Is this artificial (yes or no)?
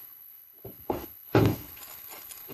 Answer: yes